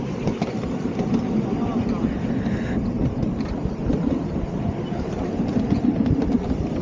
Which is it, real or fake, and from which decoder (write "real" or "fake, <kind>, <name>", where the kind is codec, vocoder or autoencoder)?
real